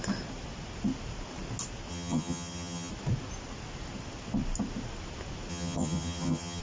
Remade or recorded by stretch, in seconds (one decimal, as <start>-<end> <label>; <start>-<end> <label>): 0.0-1.9 recorded; 1.9-2.9 remade; 2.9-5.5 recorded; 5.5-6.6 remade